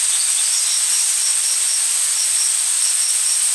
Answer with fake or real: real